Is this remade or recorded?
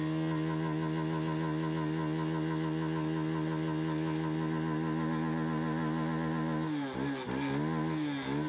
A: recorded